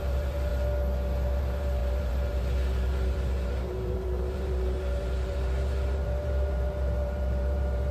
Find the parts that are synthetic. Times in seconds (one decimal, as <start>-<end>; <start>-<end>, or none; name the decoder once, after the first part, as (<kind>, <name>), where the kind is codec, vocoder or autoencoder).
0.0-0.5 (vocoder, BigVGAN v2); 1.4-7.9